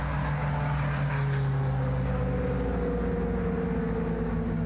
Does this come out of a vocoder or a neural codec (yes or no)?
no